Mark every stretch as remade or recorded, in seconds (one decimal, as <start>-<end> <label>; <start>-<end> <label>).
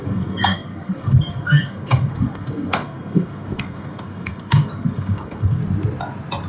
0.0-5.6 remade; 5.6-6.5 recorded